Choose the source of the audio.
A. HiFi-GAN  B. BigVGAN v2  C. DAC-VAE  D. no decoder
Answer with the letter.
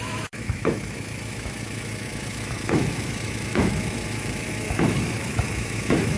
C